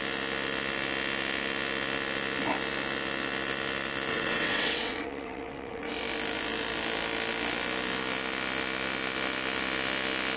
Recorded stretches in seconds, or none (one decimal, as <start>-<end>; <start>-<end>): 0.0-4.1; 5.9-10.4